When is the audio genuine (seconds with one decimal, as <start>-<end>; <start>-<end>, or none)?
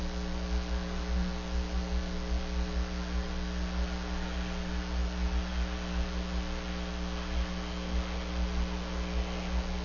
0.0-9.8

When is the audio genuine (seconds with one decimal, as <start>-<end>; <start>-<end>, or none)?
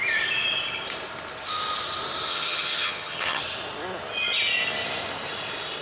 0.0-2.3; 3.4-5.8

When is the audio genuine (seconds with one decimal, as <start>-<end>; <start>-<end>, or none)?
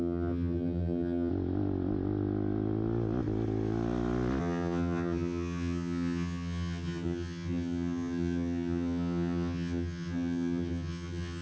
1.3-4.4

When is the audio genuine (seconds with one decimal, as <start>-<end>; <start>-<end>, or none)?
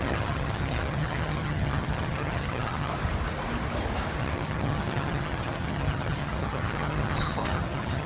2.9-4.2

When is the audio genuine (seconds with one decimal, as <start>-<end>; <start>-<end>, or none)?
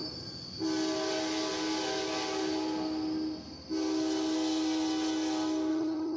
0.0-5.7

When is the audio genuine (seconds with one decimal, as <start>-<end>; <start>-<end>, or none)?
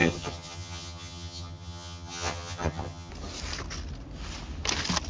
3.1-5.1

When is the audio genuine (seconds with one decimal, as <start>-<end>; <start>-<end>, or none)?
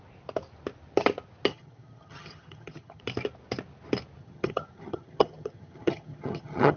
0.0-1.5; 3.0-4.2